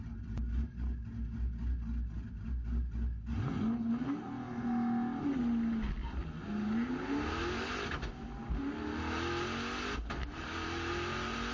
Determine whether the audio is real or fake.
real